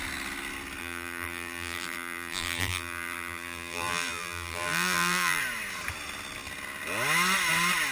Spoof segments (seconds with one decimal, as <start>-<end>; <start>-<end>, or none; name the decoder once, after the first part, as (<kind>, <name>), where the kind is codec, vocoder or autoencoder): 0.8-5.4 (vocoder, BigVGAN v2)